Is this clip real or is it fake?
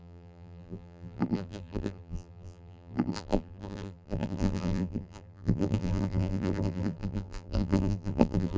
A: fake